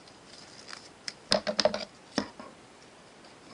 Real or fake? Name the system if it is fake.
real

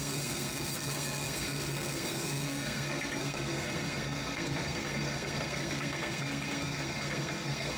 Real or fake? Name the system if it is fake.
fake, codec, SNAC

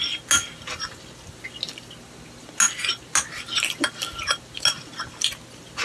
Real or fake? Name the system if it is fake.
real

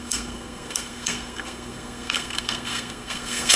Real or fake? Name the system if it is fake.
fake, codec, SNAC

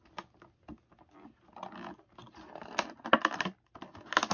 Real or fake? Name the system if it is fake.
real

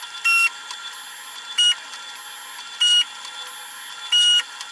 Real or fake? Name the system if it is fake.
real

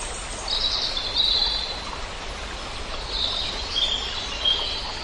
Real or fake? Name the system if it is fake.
real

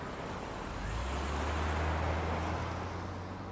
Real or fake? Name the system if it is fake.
real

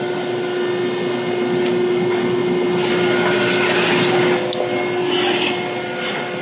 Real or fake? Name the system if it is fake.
real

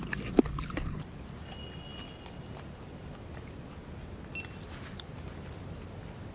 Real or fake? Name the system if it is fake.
real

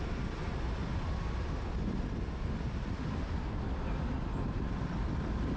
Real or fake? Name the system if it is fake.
real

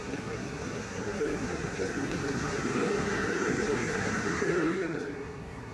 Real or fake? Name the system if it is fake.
fake, codec, SNAC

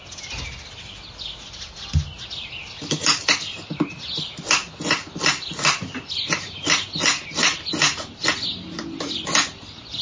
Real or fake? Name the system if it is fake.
real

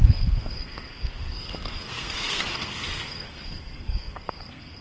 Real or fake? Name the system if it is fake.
fake, codec, SNAC